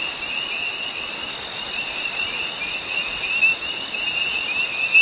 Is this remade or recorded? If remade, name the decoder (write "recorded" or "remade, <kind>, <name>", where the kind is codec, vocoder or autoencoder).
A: recorded